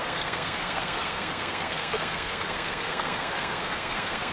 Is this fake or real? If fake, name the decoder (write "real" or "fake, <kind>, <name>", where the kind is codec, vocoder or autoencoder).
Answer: fake, codec, SNAC